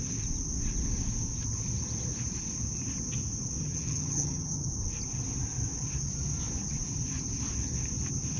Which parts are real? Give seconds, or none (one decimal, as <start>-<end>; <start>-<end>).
0.0-3.6; 4.7-8.4

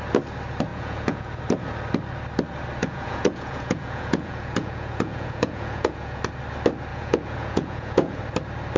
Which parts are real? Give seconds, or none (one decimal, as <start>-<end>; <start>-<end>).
0.0-0.7; 1.4-2.8; 6.2-6.9; 8.2-8.8

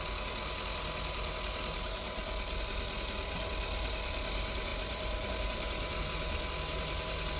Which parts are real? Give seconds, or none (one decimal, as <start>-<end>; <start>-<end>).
0.0-4.7; 5.3-7.4

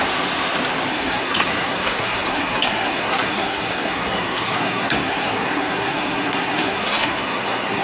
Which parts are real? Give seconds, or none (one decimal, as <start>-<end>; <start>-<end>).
0.0-0.9

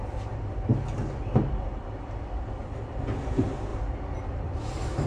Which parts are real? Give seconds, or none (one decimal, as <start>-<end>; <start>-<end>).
0.7-3.3; 3.7-4.4

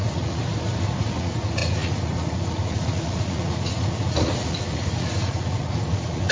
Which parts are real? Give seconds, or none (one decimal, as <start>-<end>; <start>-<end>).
0.4-1.0